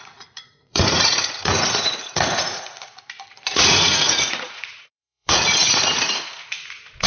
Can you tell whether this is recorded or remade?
remade